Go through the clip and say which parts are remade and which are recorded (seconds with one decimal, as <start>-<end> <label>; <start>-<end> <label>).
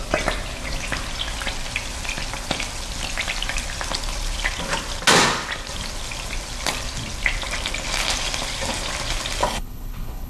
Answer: 0.0-9.4 recorded; 9.4-10.3 remade